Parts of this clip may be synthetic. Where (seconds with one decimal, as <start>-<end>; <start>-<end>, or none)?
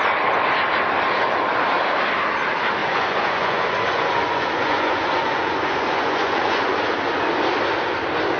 2.8-6.8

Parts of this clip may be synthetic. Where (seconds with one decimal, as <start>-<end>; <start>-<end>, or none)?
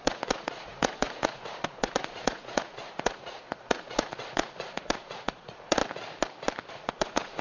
0.0-5.8; 6.7-7.4